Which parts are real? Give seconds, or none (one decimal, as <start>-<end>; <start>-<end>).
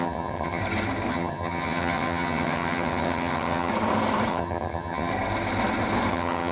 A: 0.6-1.1; 3.7-4.3; 5.1-6.1